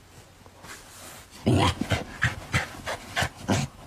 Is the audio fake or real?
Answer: real